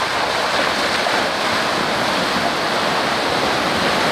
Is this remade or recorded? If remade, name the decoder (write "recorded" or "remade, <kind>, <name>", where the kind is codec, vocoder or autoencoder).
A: recorded